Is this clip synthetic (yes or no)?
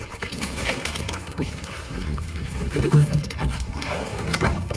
yes